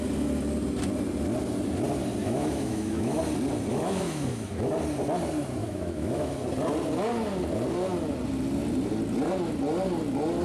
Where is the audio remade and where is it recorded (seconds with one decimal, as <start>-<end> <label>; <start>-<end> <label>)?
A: 0.0-2.2 recorded; 2.2-3.2 remade; 3.2-3.7 recorded; 3.7-4.7 remade; 4.7-5.6 recorded; 5.6-6.3 remade; 6.3-10.4 recorded